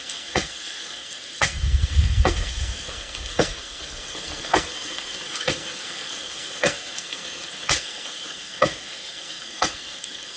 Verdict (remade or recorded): remade